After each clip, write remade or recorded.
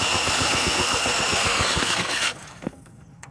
remade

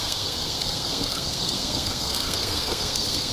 remade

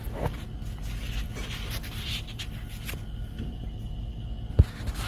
recorded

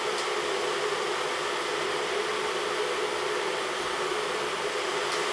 recorded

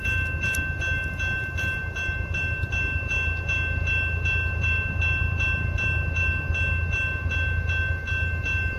recorded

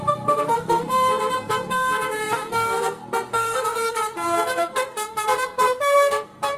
remade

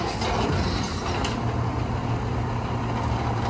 recorded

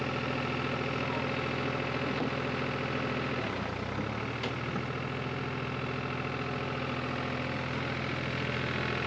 recorded